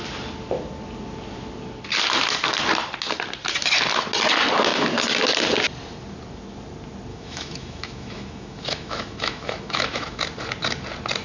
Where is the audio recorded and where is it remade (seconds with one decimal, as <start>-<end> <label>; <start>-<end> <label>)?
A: 0.0-7.1 recorded; 7.1-10.2 remade; 10.2-11.2 recorded